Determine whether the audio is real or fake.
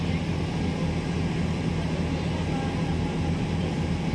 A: real